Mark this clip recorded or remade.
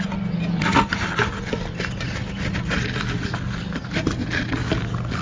recorded